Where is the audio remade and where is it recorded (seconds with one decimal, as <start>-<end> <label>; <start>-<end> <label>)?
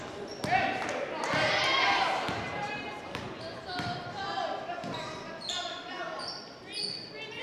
0.0-7.4 recorded